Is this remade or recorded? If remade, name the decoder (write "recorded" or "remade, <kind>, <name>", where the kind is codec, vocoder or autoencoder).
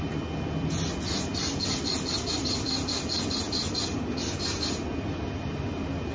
recorded